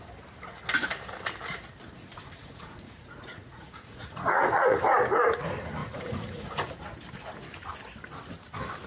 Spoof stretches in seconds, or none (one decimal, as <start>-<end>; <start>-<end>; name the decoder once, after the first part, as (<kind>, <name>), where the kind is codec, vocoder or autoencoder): 2.0-4.8 (vocoder, Vocos); 5.8-6.8